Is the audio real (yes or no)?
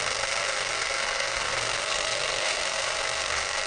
no